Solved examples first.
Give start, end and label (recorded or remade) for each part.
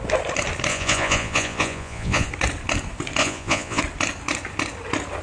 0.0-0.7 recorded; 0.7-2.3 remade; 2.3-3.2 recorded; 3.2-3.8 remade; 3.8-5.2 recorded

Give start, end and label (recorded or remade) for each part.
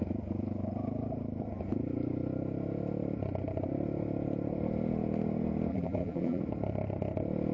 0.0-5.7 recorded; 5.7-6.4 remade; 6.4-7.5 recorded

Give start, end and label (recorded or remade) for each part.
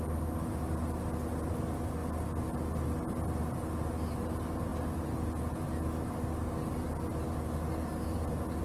0.0-8.6 recorded